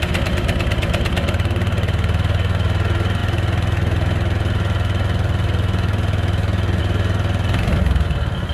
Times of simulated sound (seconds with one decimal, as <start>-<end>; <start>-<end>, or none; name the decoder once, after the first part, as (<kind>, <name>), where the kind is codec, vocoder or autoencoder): none